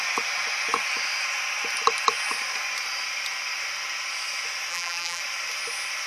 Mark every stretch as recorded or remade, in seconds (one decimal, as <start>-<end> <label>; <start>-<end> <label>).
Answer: 0.0-4.7 recorded; 4.7-5.2 remade; 5.2-6.1 recorded